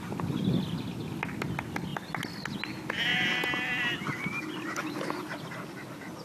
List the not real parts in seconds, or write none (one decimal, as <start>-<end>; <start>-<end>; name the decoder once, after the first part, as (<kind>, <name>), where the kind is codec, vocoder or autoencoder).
3.1-4.8 (vocoder, BigVGAN v2)